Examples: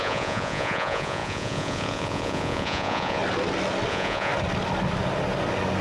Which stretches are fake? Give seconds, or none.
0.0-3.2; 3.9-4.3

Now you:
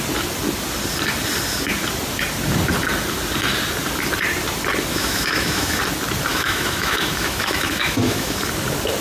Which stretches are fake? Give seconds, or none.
4.9-5.8; 6.3-8.4

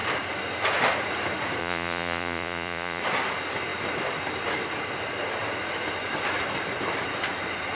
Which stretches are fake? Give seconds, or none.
1.6-3.0

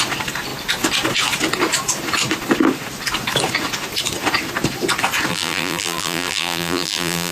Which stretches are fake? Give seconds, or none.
5.3-7.3

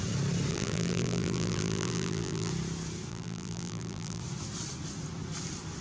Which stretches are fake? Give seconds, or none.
0.5-2.5; 3.1-4.2

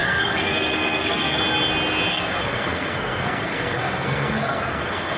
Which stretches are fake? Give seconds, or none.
0.0-1.4; 2.1-5.2

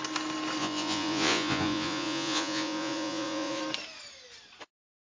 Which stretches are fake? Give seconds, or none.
0.6-3.6

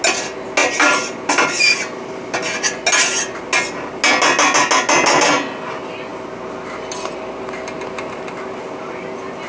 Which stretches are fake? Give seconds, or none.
none